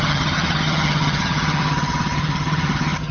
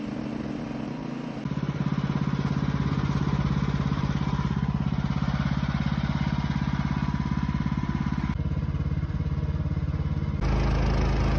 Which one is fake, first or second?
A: first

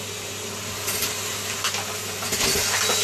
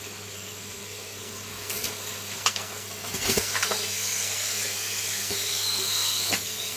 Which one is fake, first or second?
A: second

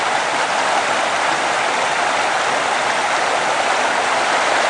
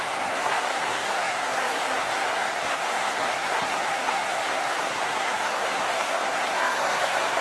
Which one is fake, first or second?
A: second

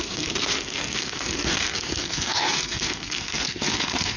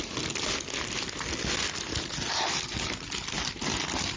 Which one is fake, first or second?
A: first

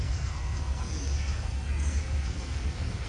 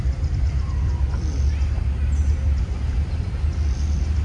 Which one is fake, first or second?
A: first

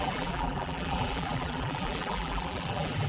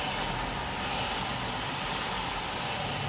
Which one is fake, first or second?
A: first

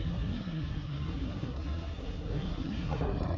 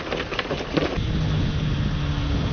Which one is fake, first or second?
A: first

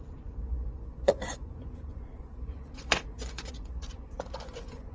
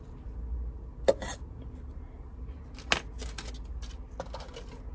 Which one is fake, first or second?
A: first